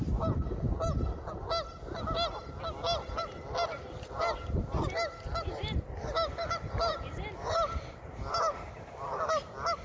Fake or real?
real